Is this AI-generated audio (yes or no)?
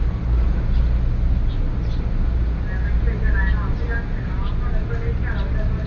no